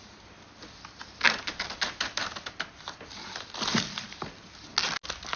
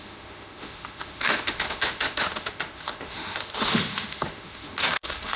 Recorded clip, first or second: first